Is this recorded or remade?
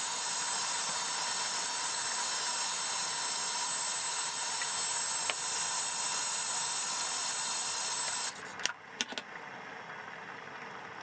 recorded